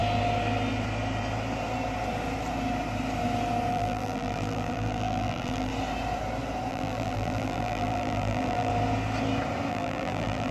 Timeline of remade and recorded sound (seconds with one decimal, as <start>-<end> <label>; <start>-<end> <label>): 0.0-3.7 recorded; 3.7-5.7 remade; 5.7-6.7 recorded; 6.7-8.7 remade; 8.7-9.7 recorded; 9.7-10.5 remade